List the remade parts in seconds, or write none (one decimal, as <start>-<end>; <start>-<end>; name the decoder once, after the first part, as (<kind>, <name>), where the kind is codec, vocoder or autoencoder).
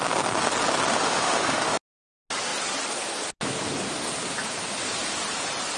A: 0.9-1.8 (autoencoder, DAC-VAE)